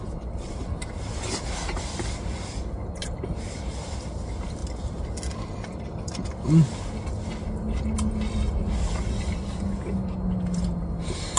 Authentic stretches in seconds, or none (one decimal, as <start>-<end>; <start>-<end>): 0.0-11.4